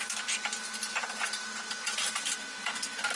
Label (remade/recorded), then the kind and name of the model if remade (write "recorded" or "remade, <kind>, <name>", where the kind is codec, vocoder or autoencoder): recorded